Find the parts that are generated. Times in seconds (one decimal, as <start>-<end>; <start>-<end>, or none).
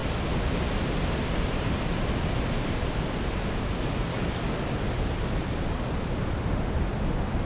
4.1-4.7